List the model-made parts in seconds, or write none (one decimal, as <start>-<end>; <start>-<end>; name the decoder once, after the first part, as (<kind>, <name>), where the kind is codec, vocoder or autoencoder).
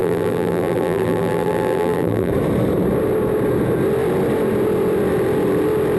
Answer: 0.0-2.3 (vocoder, BigVGAN v2)